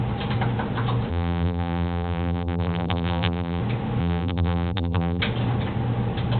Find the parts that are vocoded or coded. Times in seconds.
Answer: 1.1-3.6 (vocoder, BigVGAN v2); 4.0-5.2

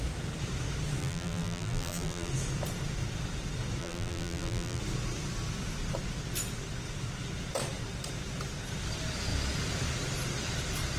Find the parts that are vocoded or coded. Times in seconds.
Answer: 1.0-2.3 (vocoder, BigVGAN v2); 3.8-4.8

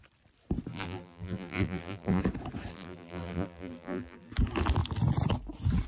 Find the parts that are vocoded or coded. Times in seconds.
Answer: 0.7-2.2 (vocoder, BigVGAN v2); 2.7-4.3

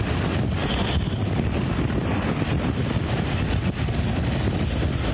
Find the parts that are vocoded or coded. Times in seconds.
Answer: 0.6-3.7 (vocoder, BigVGAN v2)

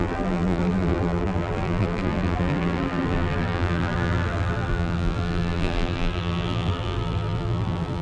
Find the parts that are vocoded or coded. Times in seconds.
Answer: 0.0-8.0 (vocoder, BigVGAN v2)

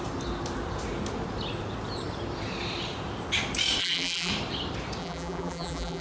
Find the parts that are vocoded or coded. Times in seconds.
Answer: 3.8-4.3 (vocoder, BigVGAN v2); 5.0-6.0

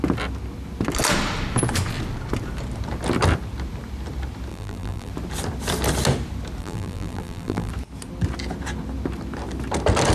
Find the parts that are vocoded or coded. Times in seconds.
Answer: 4.5-5.1 (vocoder, BigVGAN v2); 6.6-7.7